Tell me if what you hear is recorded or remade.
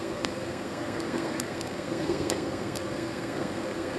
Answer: remade